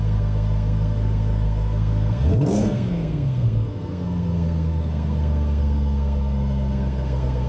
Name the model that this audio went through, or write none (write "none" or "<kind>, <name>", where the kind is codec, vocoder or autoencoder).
codec, SNAC